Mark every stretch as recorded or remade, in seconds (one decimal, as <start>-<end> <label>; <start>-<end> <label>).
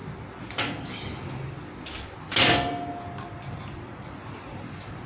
0.0-5.1 recorded